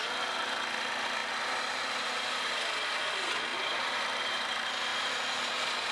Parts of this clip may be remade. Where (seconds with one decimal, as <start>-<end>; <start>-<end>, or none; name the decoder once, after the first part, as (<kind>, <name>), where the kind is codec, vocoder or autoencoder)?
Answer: 3.5-4.5 (vocoder, BigVGAN v2); 4.9-5.5